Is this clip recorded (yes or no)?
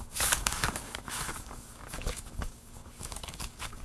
no